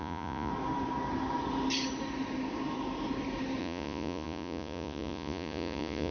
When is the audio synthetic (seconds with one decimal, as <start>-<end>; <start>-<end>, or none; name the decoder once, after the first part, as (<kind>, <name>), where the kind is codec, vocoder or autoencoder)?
0.0-0.5 (vocoder, Vocos); 3.6-6.1